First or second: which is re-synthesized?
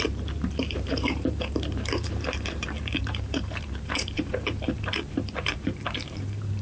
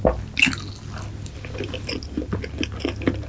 first